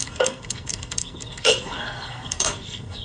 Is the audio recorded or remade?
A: remade